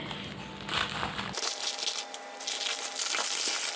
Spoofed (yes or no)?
no